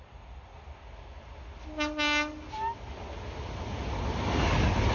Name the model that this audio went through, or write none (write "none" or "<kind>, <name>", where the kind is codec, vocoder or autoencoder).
none